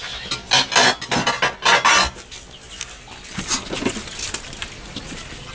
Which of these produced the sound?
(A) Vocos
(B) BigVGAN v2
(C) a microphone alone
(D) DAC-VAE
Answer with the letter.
C